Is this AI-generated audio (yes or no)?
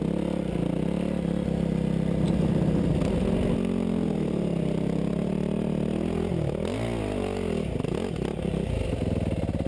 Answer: no